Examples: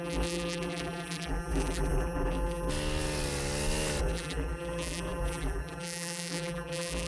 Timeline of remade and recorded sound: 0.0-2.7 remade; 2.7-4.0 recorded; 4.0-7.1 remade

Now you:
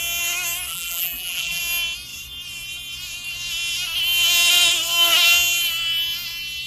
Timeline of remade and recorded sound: 0.0-0.7 recorded; 0.7-1.6 remade; 1.6-6.7 recorded

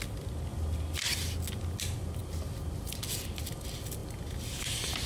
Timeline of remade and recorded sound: 0.0-5.1 recorded

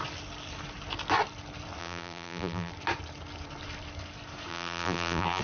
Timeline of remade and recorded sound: 0.0-1.8 recorded; 1.8-2.7 remade; 2.7-4.5 recorded; 4.5-5.4 remade

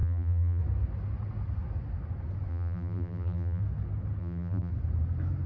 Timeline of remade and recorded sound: 0.0-0.6 remade; 0.6-2.5 recorded; 2.5-3.6 remade; 3.6-4.2 recorded; 4.2-4.7 remade; 4.7-5.5 recorded

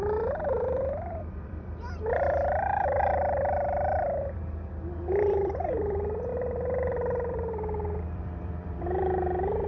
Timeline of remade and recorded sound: 0.0-9.7 remade

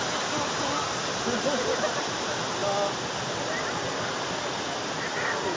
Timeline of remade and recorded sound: 0.0-5.6 recorded